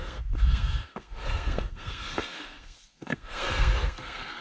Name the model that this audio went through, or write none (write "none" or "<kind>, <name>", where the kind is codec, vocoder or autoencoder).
codec, SNAC